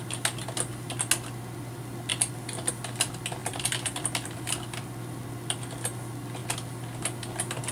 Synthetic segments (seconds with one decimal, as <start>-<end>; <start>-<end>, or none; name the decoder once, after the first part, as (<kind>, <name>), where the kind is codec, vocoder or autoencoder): 3.4-5.2 (vocoder, BigVGAN v2)